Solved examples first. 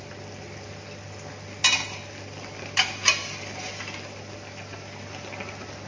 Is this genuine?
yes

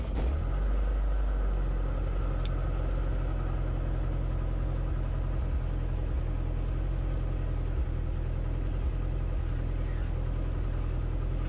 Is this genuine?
yes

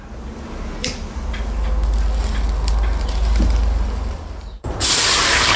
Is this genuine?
yes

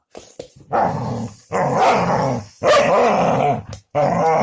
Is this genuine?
yes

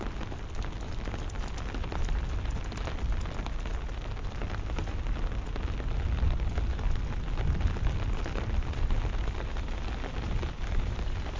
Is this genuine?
yes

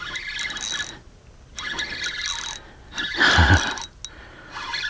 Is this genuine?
yes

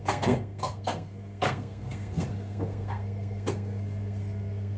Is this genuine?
no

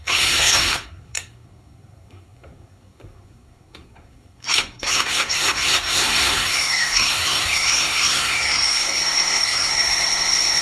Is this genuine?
no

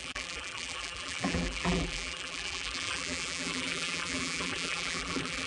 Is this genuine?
no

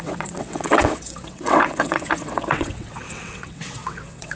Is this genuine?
no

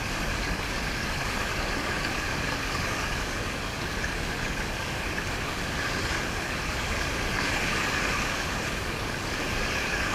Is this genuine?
no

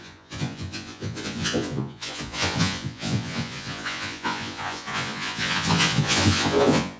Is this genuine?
no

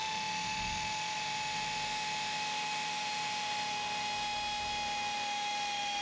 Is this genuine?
no